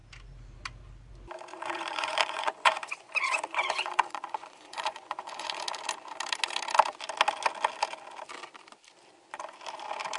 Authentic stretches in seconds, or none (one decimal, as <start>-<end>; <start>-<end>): 0.0-1.5; 5.6-10.2